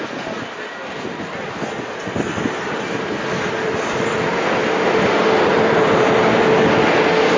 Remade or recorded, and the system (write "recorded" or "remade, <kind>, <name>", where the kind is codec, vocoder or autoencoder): recorded